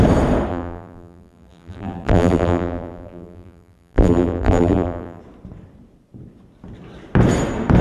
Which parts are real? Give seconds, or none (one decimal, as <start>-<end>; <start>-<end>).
0.0-0.5; 5.2-7.8